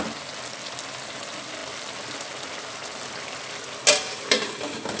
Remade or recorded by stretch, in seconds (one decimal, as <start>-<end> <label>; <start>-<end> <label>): 0.0-5.0 recorded

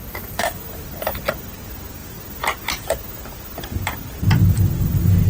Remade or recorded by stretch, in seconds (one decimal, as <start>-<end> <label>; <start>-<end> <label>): 0.0-5.3 recorded